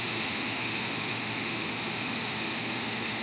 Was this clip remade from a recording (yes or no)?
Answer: yes